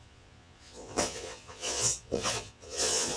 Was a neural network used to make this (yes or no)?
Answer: yes